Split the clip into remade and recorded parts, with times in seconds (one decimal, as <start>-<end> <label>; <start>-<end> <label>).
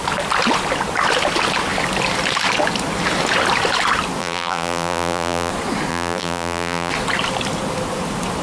0.0-4.2 recorded; 4.2-5.5 remade; 5.5-5.9 recorded; 5.9-6.9 remade; 6.9-8.4 recorded